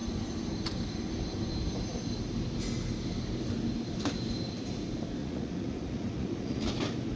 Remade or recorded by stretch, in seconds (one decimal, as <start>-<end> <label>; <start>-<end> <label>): 0.0-5.2 recorded; 5.2-6.7 remade; 6.7-7.2 recorded